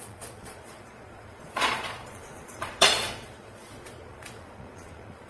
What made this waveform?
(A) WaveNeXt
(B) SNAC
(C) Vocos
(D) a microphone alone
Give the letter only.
C